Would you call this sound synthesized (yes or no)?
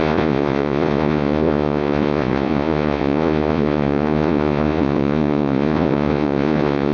yes